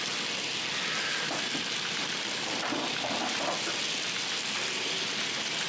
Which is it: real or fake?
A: real